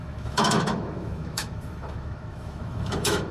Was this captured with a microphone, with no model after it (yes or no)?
no